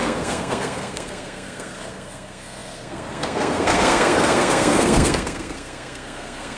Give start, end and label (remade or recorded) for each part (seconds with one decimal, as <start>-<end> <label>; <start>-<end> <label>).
0.0-6.6 remade